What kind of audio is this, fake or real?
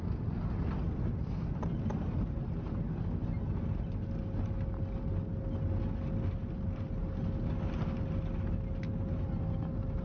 real